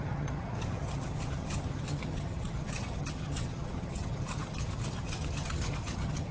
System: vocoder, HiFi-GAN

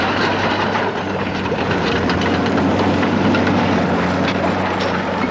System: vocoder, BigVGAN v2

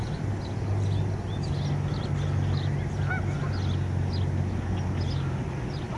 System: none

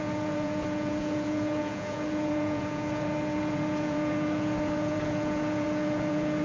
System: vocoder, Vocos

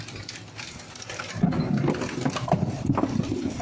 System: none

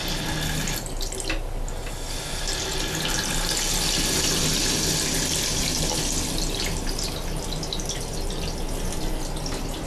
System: none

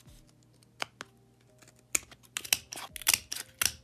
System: none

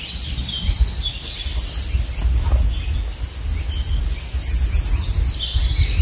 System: none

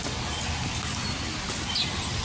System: none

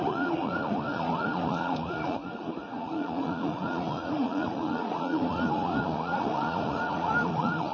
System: vocoder, Vocos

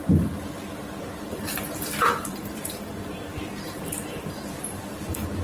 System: vocoder, BigVGAN v2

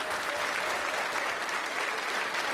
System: none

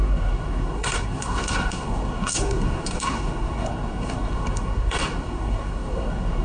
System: codec, SNAC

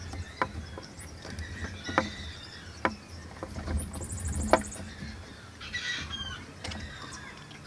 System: none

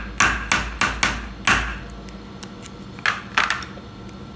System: none